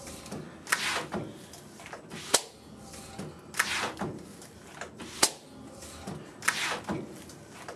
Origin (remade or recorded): recorded